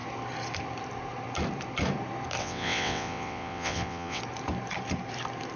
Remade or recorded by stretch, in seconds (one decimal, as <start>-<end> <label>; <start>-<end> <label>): 0.0-2.4 recorded; 2.4-4.2 remade; 4.2-5.6 recorded